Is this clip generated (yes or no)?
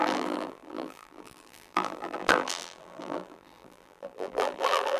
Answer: yes